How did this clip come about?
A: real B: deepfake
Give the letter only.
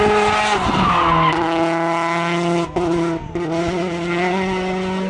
A